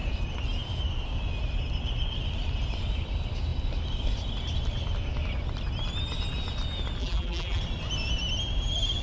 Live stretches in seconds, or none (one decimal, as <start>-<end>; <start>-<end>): 0.0-7.0; 7.6-9.0

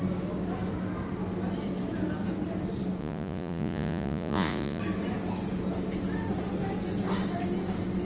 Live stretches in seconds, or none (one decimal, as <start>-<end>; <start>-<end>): 0.0-3.0; 4.8-8.1

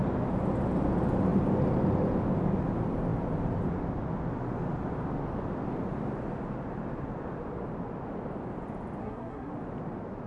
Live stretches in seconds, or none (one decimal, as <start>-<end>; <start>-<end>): 0.0-9.0; 9.5-10.3